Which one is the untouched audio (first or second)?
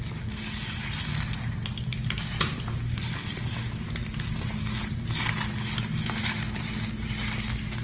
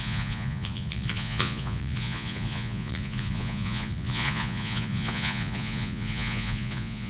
first